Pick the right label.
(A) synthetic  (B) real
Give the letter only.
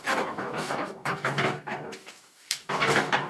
A